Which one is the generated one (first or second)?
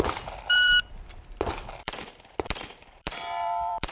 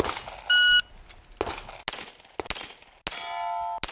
first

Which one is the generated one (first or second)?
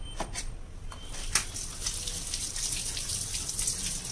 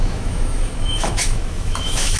second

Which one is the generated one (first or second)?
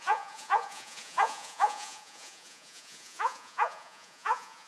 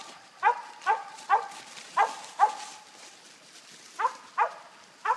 first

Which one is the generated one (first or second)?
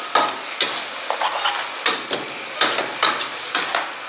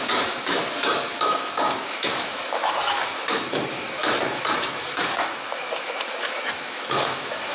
second